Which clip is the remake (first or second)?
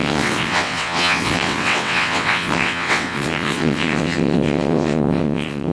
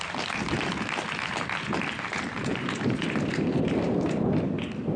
first